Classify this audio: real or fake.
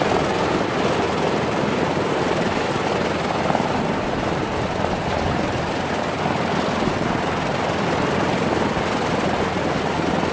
real